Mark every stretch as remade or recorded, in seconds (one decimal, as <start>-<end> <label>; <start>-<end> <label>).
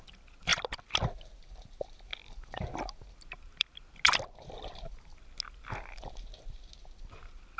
0.0-7.6 recorded